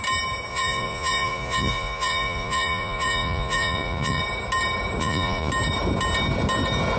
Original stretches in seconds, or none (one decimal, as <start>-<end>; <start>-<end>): 0.0-0.5; 4.2-5.0; 5.5-7.0